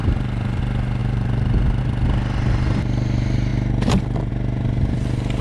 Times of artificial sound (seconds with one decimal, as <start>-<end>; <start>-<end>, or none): 0.0-0.6; 1.0-1.8